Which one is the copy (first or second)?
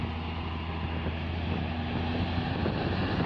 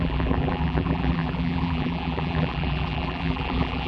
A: second